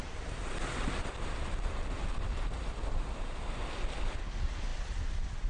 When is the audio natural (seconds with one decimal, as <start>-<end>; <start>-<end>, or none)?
0.0-5.5

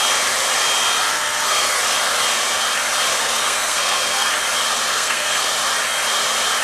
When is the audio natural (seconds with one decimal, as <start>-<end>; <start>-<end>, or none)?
0.0-1.1; 1.8-3.2; 4.3-4.9; 5.5-6.6

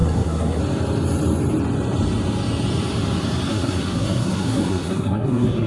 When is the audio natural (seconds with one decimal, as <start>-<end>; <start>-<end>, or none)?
0.6-3.5

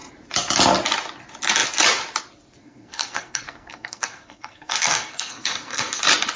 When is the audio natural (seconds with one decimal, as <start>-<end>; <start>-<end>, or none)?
0.0-2.6; 6.0-6.4

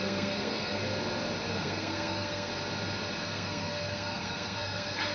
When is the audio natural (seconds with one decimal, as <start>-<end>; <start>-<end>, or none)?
0.8-1.5; 2.5-3.2

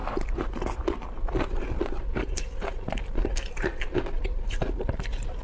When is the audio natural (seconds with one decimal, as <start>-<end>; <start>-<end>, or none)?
0.0-5.4

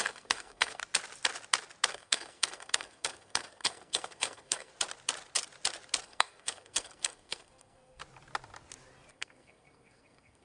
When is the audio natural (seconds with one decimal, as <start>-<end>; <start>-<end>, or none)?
0.8-1.9; 4.7-6.0; 8.0-9.1

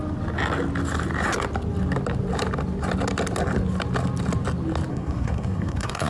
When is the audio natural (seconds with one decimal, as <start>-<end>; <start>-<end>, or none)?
0.0-4.9